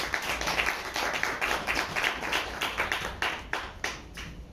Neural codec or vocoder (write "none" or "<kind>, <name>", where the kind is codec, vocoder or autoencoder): none